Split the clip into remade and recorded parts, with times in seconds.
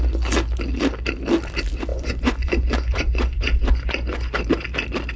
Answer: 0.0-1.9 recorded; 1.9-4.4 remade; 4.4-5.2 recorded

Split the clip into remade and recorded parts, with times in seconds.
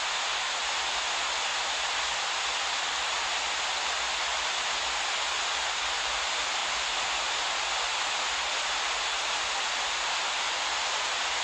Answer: 0.0-11.4 recorded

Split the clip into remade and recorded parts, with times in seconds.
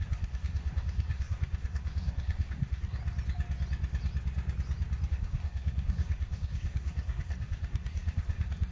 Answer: 0.0-3.0 remade; 3.0-5.1 recorded; 5.1-8.7 remade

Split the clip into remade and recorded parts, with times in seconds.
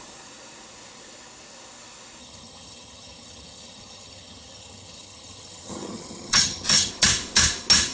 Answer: 0.0-2.2 recorded; 2.2-6.9 remade; 6.9-7.9 recorded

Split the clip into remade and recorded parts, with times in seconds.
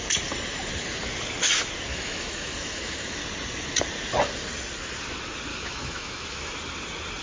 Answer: 0.0-1.9 recorded; 1.9-3.2 remade; 3.2-5.5 recorded; 5.5-6.5 remade; 6.5-7.2 recorded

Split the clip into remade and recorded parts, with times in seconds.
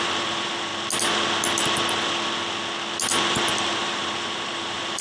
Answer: 0.0-0.7 remade; 0.7-3.2 recorded; 3.2-5.0 remade